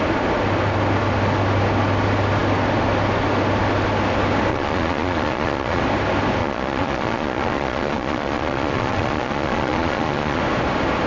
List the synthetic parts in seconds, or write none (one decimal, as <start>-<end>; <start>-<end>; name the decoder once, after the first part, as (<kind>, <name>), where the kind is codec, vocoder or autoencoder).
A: 4.5-5.8 (vocoder, Vocos); 6.4-10.4